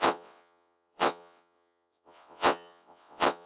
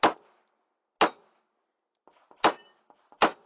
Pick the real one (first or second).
second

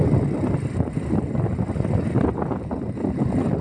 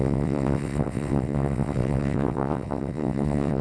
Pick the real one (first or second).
first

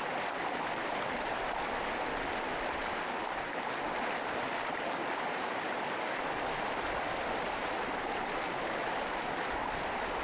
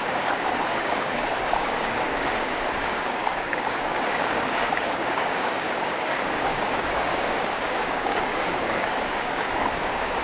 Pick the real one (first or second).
first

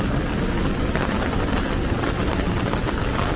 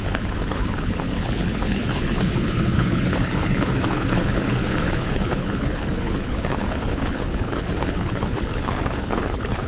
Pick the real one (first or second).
first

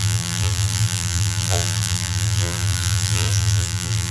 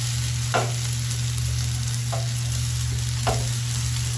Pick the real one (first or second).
second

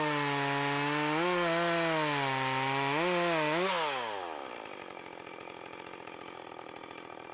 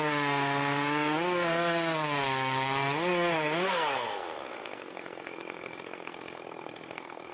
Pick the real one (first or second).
first